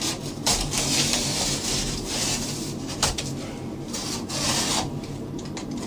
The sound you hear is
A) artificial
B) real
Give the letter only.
A